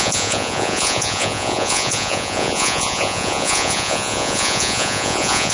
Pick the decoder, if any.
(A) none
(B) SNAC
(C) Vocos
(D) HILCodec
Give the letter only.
C